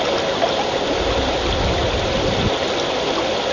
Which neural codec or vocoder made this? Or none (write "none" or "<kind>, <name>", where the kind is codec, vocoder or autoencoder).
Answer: none